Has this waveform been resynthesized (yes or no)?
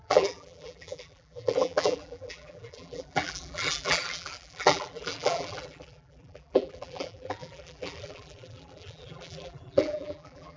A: yes